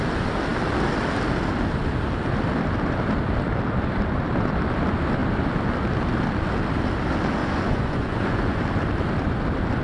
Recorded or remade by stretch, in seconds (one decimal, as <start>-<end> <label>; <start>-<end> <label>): 0.0-7.4 recorded; 7.4-8.6 remade; 8.6-9.8 recorded